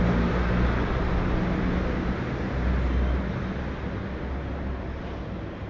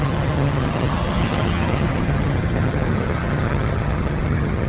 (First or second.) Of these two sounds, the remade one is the second